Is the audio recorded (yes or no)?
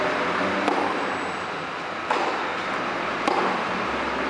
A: yes